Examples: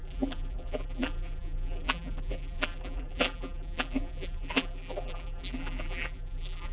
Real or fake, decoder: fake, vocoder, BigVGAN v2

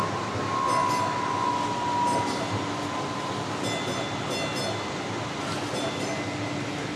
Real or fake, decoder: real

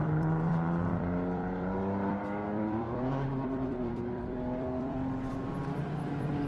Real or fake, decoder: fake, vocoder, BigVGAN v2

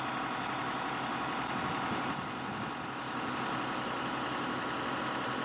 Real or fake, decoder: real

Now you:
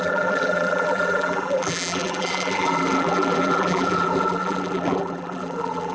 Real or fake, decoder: fake, vocoder, BigVGAN v2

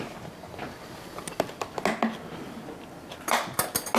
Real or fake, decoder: real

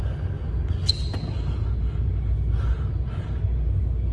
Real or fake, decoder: real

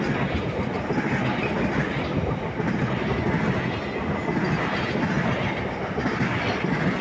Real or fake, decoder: real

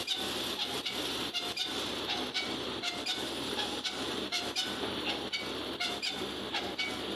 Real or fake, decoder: real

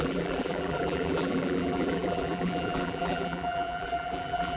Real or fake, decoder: fake, vocoder, BigVGAN v2